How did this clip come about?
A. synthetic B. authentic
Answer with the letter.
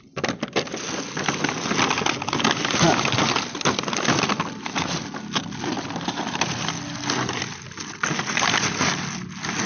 B